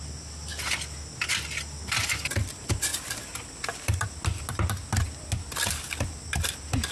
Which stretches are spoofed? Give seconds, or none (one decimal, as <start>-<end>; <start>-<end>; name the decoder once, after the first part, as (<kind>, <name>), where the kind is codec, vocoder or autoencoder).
none